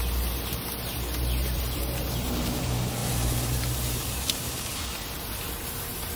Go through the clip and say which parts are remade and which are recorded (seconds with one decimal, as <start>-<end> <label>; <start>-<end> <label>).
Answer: 0.0-1.4 recorded; 1.4-2.5 remade; 2.5-3.0 recorded; 3.0-4.6 remade; 4.6-6.2 recorded